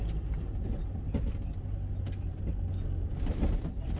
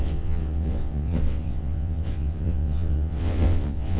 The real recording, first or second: first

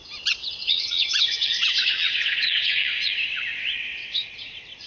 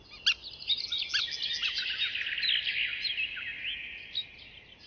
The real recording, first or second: second